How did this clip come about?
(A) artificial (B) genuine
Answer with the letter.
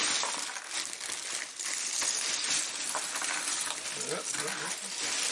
B